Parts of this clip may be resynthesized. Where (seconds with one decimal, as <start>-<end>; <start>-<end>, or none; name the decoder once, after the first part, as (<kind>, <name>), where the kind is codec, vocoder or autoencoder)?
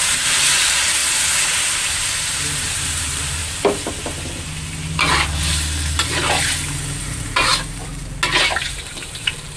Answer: 0.0-1.0 (vocoder, BigVGAN v2); 1.9-3.4; 7.0-7.5; 8.9-9.6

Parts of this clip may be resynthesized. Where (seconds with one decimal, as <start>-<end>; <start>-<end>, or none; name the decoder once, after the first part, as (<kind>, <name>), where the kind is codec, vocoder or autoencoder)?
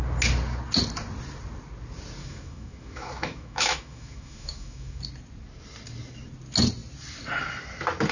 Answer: 2.2-5.0 (autoencoder, DAC-VAE)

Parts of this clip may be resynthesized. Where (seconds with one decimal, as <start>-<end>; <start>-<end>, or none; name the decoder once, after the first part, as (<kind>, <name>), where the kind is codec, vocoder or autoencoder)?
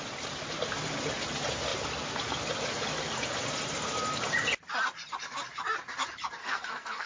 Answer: 6.4-7.1 (codec, SNAC)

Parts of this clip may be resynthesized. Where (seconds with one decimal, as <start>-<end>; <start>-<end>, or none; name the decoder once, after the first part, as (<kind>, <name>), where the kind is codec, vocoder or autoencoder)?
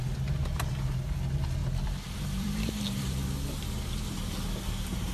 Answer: 1.6-5.1 (vocoder, BigVGAN v2)